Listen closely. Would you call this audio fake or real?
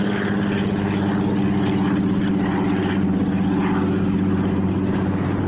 real